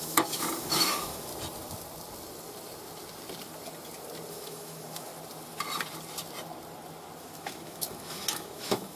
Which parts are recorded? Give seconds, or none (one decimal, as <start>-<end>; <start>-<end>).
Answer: 1.3-4.3; 5.1-7.2